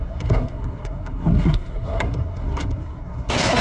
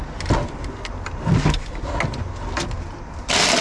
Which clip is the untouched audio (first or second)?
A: second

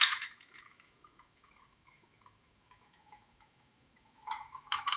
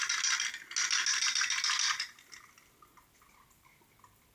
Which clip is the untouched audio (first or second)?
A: second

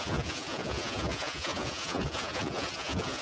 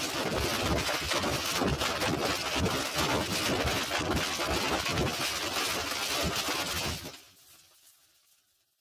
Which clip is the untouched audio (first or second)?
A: second